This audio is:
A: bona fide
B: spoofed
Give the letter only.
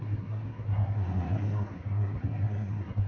B